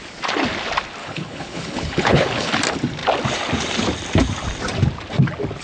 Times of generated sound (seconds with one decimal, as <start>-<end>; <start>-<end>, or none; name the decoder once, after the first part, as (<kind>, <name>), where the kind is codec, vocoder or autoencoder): 1.0-2.5 (codec, HILCodec)